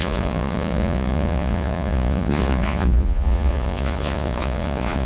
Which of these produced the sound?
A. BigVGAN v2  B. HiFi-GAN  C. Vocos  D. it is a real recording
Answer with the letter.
C